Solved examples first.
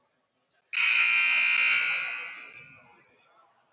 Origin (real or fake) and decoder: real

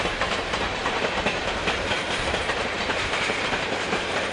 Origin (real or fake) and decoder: fake, vocoder, BigVGAN v2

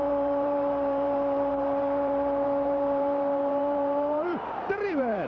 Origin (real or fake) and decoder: fake, vocoder, BigVGAN v2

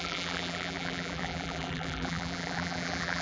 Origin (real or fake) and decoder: fake, vocoder, BigVGAN v2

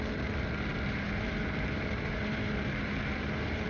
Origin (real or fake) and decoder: fake, vocoder, BigVGAN v2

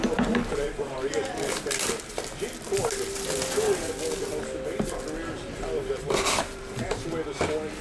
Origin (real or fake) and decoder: fake, vocoder, BigVGAN v2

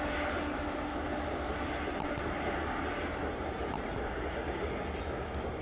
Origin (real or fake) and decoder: real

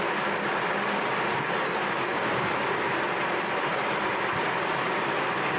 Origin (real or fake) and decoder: fake, vocoder, BigVGAN v2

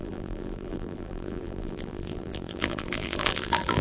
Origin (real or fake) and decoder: fake, vocoder, BigVGAN v2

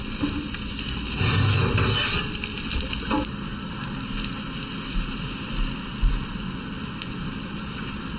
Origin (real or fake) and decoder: real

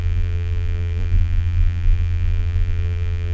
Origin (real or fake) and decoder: fake, vocoder, BigVGAN v2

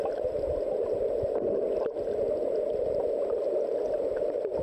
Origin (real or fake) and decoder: real